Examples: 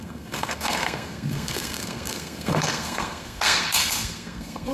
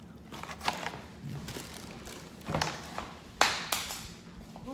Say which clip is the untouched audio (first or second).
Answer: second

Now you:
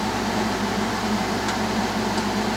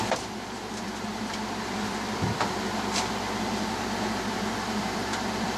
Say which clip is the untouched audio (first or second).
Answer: first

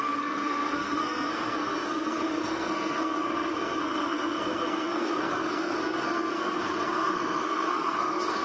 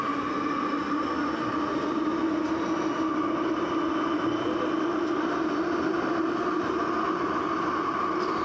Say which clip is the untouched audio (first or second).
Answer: second